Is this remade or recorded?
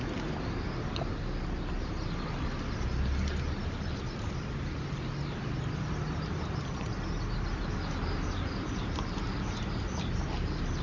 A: recorded